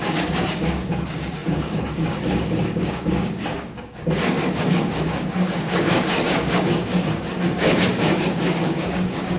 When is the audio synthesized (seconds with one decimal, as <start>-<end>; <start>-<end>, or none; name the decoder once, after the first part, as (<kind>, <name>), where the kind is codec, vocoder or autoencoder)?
0.0-9.4 (codec, DAC)